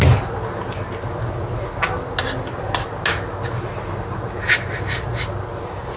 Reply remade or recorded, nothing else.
recorded